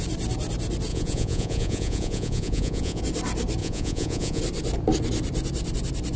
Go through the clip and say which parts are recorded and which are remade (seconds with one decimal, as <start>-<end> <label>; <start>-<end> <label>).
0.0-0.9 recorded; 0.9-3.0 remade; 3.0-3.6 recorded; 3.6-4.4 remade; 4.4-6.2 recorded